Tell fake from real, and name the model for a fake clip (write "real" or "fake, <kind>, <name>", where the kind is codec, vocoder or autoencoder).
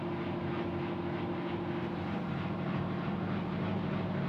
real